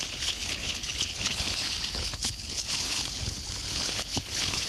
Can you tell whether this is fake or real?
fake